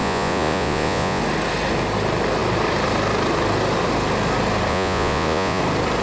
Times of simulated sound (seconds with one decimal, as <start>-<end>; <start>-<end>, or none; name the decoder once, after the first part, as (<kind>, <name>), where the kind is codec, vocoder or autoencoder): 0.0-1.2 (vocoder, Vocos); 4.7-5.6